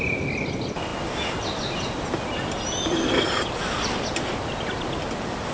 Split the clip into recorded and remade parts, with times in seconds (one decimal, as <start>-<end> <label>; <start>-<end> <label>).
0.0-5.5 recorded